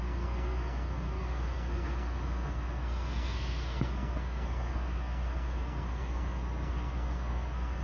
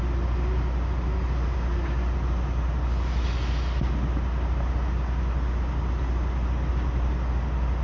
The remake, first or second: first